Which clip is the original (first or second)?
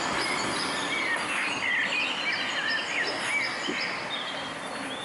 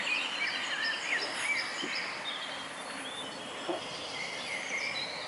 first